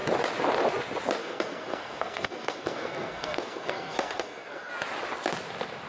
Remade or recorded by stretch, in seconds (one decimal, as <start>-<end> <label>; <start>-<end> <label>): 0.0-1.2 recorded; 1.2-4.7 remade; 4.7-5.9 recorded